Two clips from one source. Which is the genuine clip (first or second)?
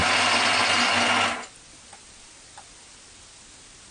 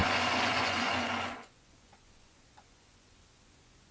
first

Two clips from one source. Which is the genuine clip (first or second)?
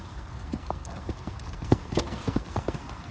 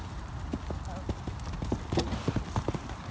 second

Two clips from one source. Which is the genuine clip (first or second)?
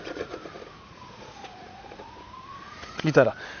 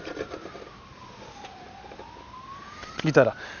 second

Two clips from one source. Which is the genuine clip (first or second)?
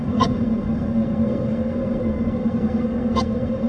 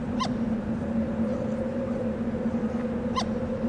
second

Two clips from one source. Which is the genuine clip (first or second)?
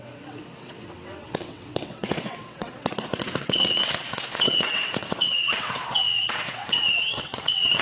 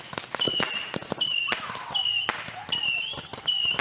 second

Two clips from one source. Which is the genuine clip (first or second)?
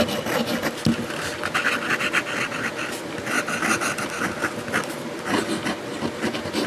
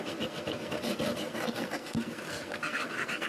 first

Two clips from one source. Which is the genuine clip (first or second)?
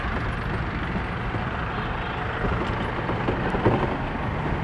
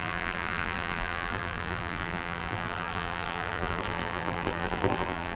first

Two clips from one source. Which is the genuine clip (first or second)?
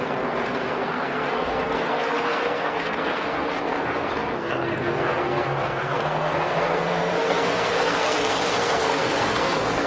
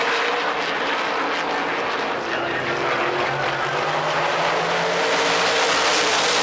second